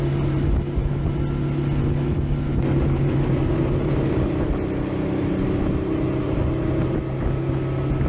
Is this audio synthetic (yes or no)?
no